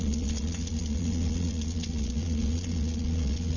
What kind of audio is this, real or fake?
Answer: fake